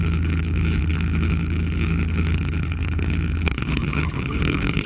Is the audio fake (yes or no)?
yes